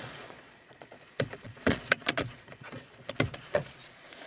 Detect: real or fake fake